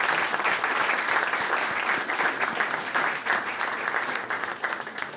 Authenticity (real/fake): real